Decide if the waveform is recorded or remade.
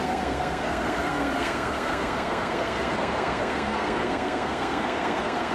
remade